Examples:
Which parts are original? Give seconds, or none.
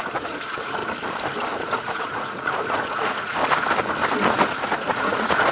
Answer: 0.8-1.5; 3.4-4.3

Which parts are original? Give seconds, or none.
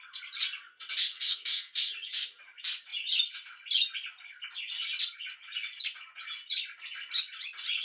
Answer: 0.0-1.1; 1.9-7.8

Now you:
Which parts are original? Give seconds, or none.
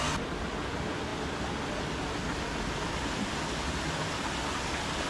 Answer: 0.0-5.1